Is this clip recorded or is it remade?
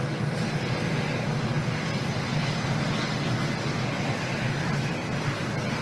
recorded